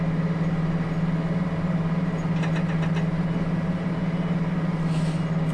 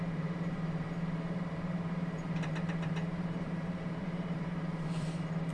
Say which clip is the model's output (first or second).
second